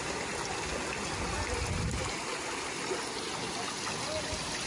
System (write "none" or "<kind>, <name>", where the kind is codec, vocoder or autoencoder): none